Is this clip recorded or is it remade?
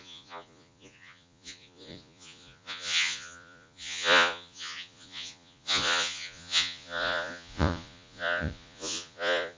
remade